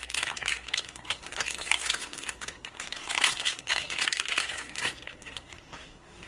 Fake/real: fake